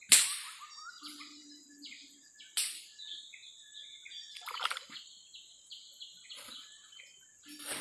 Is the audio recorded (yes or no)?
yes